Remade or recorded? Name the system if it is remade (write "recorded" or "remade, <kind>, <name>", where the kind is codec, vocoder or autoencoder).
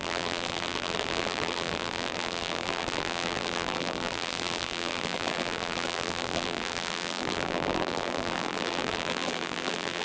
remade, vocoder, BigVGAN v2